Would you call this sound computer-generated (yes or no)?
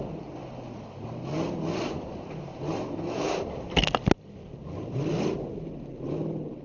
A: no